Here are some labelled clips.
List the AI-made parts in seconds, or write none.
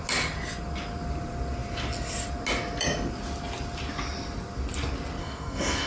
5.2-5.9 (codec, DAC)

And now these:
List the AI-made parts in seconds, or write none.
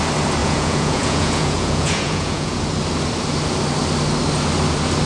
0.4-2.6 (vocoder, Vocos)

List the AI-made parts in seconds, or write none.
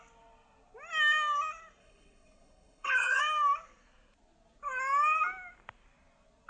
1.8-3.2 (codec, HILCodec)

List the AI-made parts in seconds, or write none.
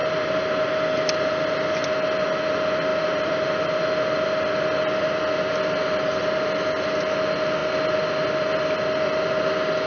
2.9-4.0 (vocoder, BigVGAN v2)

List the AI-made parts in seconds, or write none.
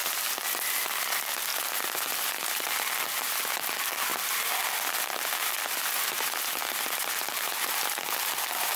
none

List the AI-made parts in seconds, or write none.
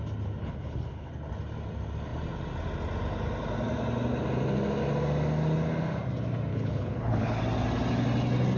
0.4-1.1 (codec, HILCodec); 6.5-7.4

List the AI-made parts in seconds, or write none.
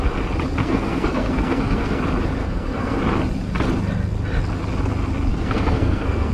0.6-2.0 (codec, SNAC); 2.4-3.0; 5.3-6.3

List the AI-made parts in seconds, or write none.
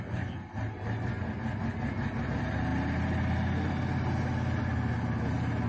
none